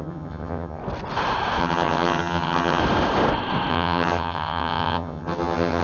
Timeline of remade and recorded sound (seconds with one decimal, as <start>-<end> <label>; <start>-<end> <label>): 0.0-0.8 remade; 0.8-1.6 recorded; 1.6-2.8 remade; 2.8-3.7 recorded; 3.7-5.8 remade